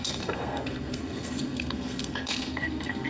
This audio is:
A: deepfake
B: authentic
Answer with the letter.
A